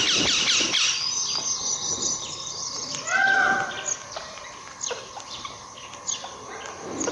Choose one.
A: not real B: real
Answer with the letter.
B